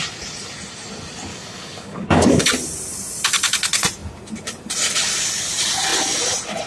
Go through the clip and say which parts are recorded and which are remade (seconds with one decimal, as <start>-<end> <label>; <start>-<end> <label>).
0.0-1.3 recorded; 1.3-2.4 remade; 2.4-6.7 recorded